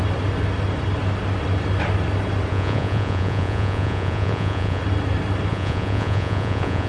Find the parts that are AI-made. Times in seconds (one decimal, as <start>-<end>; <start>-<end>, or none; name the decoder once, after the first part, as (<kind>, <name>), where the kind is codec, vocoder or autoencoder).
2.5-4.8 (vocoder, Vocos); 5.5-6.9